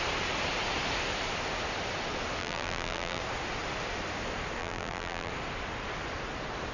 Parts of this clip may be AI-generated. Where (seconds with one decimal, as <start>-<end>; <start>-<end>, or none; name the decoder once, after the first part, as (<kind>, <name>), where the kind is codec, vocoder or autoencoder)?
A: 2.4-3.2 (vocoder, BigVGAN v2); 4.6-5.3